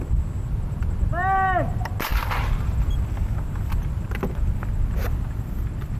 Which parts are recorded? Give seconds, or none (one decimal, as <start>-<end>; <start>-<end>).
0.0-6.0